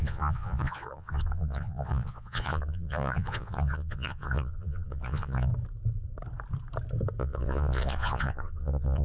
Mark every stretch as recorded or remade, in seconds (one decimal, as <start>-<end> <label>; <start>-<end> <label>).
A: 0.0-5.5 remade; 5.5-7.2 recorded; 7.2-9.0 remade